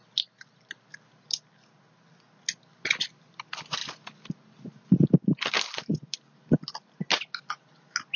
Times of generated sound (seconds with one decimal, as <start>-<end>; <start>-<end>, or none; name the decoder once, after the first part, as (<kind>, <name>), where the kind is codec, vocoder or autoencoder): none